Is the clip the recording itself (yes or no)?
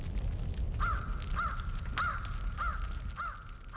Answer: yes